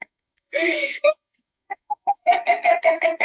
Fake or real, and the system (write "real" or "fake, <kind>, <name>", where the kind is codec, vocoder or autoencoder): fake, codec, SNAC